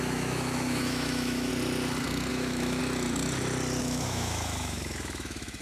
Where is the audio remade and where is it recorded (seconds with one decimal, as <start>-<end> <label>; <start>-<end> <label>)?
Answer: 0.0-1.5 remade; 1.5-2.3 recorded; 2.3-2.8 remade; 2.8-3.8 recorded; 3.8-5.6 remade